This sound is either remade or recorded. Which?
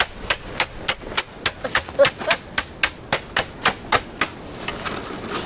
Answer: recorded